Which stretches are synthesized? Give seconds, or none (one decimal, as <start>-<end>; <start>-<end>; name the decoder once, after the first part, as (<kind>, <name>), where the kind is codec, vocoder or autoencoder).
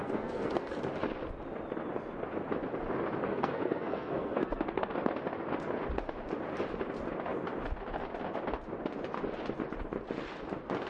0.0-0.8 (codec, SNAC); 3.3-5.1